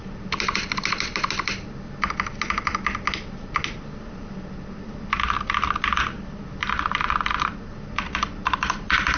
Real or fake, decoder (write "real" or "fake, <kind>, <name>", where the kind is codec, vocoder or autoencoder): fake, vocoder, BigVGAN v2